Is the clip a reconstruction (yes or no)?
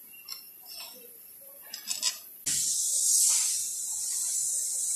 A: no